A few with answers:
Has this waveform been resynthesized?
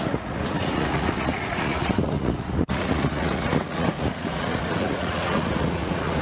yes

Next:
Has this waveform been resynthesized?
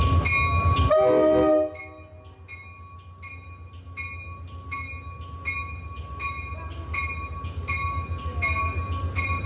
no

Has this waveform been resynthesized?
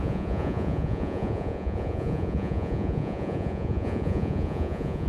yes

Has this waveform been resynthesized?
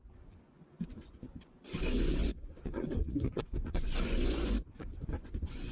yes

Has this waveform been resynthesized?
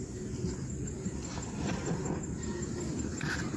no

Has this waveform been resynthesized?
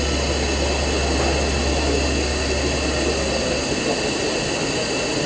no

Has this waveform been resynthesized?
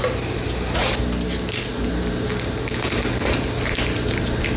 no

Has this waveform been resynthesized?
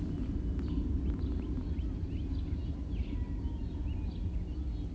no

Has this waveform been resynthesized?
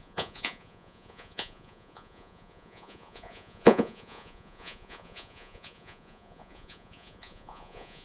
yes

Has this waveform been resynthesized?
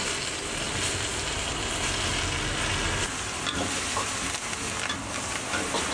no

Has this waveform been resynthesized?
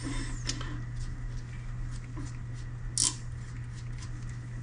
no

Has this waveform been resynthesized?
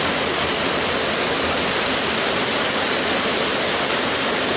no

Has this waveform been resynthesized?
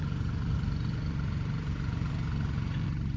no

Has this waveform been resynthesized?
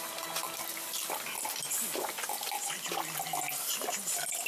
no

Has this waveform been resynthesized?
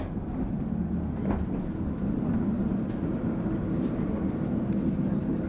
no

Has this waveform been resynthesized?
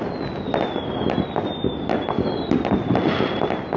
no